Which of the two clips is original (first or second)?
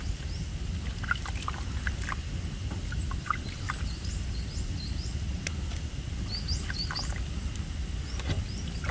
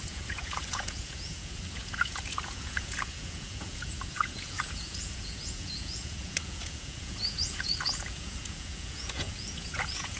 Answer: first